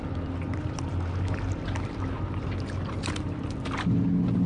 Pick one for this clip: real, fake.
real